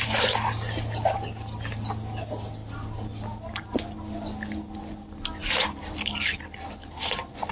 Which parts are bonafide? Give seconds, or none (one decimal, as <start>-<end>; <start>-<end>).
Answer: 0.0-7.5